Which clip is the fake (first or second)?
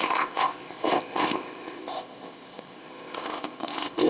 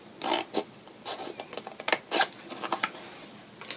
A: first